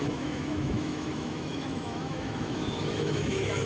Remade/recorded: remade